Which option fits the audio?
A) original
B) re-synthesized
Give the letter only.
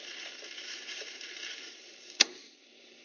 B